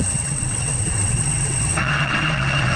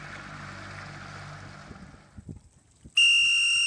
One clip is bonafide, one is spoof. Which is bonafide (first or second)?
second